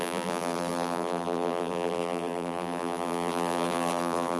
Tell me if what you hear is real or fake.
fake